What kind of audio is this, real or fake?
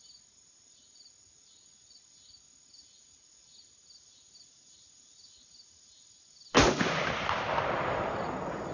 real